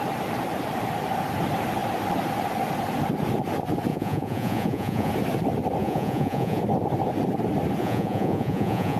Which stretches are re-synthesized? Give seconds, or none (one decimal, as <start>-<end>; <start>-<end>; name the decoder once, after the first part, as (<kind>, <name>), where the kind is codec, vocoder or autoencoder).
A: 3.9-5.1 (vocoder, Vocos); 5.8-6.6; 7.8-9.0